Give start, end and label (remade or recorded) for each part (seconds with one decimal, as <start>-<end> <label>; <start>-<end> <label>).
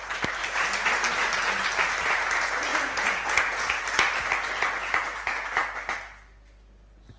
0.0-2.7 recorded; 2.7-3.8 remade; 3.8-7.2 recorded